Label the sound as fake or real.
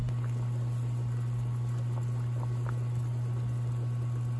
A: real